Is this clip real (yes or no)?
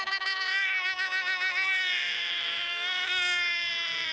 no